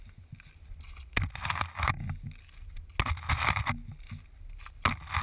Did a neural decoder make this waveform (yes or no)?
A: no